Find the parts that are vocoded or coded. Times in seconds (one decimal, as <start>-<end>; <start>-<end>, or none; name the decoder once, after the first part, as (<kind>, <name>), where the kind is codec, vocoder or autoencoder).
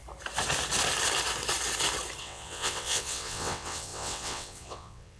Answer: 2.2-5.2 (vocoder, WaveNeXt)